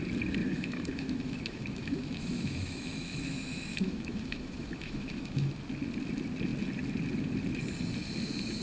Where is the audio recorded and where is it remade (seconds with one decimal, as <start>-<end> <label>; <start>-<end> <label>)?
0.0-0.4 recorded; 0.4-5.5 remade; 5.5-8.6 recorded